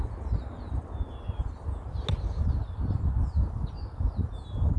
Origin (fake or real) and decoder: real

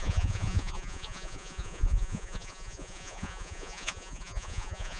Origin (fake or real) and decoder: fake, vocoder, Vocos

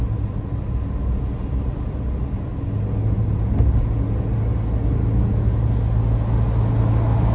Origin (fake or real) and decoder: real